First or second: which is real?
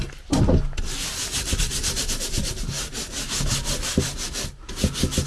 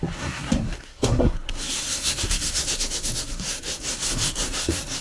first